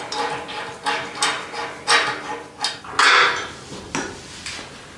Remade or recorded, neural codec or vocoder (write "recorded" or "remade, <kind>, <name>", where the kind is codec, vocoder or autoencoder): recorded